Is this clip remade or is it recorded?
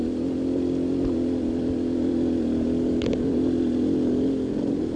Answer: recorded